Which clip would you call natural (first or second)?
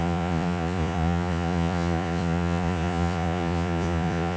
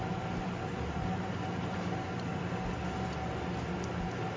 second